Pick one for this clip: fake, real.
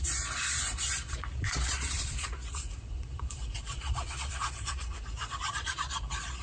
fake